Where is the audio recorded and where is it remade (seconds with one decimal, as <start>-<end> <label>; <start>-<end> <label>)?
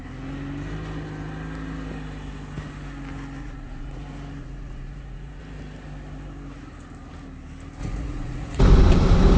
0.0-3.4 recorded; 3.4-4.0 remade; 4.0-4.4 recorded; 4.4-5.4 remade; 5.4-7.8 recorded; 7.8-8.6 remade; 8.6-9.4 recorded